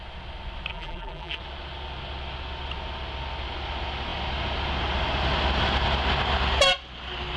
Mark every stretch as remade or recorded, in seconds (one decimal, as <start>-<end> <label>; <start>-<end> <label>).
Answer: 0.0-0.7 recorded; 0.7-1.4 remade; 1.4-7.4 recorded